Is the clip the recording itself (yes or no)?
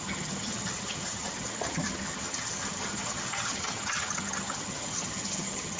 no